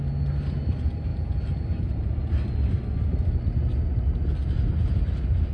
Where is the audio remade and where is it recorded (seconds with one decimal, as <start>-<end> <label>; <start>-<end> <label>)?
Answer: 0.0-1.1 recorded; 1.1-2.3 remade; 2.3-4.4 recorded; 4.4-5.5 remade